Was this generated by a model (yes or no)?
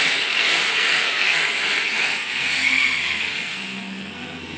yes